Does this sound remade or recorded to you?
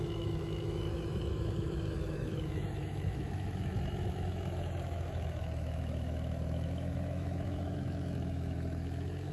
remade